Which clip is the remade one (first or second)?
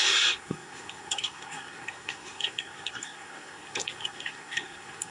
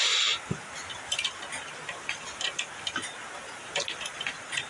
first